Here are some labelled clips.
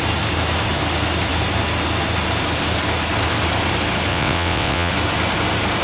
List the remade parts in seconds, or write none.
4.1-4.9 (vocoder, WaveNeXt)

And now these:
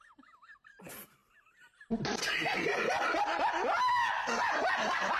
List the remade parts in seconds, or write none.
none

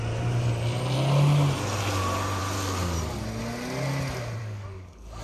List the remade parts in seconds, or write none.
4.4-5.2 (codec, DAC)

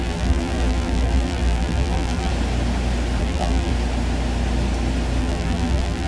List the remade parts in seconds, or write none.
0.0-2.3 (vocoder, BigVGAN v2); 3.2-3.7; 5.2-6.1

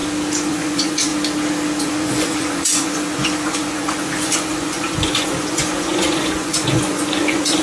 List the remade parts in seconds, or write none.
0.5-1.1 (vocoder, Vocos); 1.8-7.6

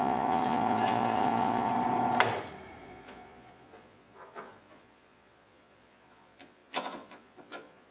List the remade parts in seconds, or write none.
0.0-1.7 (vocoder, Vocos); 2.8-7.9

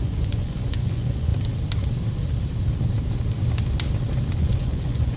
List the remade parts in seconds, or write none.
0.0-1.3 (vocoder, Vocos); 4.4-5.2

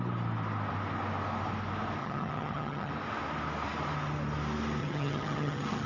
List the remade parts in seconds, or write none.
2.0-2.9 (vocoder, HiFi-GAN); 4.8-5.9